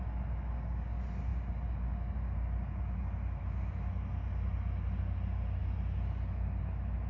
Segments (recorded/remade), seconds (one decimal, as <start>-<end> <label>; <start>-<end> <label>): 0.0-7.1 recorded